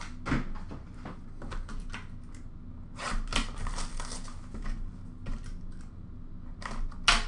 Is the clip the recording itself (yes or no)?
yes